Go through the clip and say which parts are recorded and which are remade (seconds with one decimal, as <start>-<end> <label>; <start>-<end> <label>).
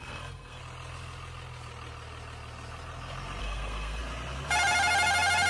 0.0-0.6 remade; 0.6-3.4 recorded; 3.4-4.0 remade; 4.0-5.5 recorded